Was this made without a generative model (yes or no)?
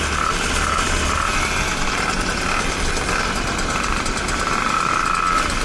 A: yes